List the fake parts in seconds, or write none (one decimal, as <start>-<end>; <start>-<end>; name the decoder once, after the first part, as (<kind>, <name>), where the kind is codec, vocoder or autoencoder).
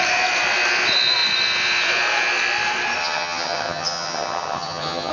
3.0-5.1 (vocoder, HiFi-GAN)